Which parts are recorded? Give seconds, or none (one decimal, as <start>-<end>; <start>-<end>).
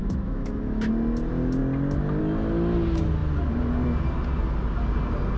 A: 0.9-5.4